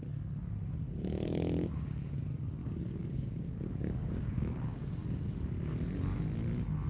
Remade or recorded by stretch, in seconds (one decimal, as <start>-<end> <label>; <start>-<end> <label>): 0.0-1.1 recorded; 1.1-2.1 remade; 2.1-2.6 recorded; 2.6-5.2 remade; 5.2-6.9 recorded